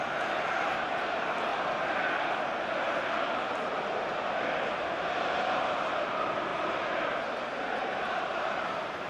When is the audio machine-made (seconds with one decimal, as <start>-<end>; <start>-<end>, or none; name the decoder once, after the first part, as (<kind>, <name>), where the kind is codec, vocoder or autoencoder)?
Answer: 0.0-1.5 (vocoder, BigVGAN v2); 4.6-9.1